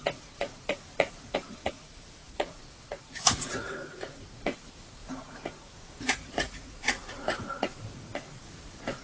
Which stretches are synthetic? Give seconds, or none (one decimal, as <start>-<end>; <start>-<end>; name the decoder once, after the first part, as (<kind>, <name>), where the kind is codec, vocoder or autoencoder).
0.0-9.0 (vocoder, Vocos)